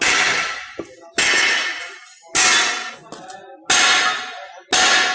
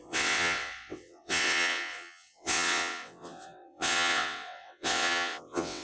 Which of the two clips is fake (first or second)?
second